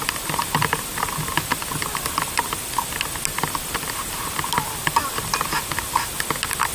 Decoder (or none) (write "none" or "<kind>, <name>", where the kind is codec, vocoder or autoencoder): none